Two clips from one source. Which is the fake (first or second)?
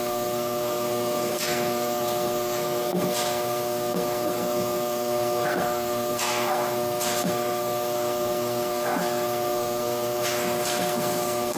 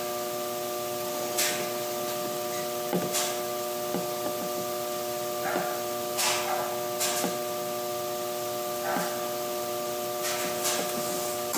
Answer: first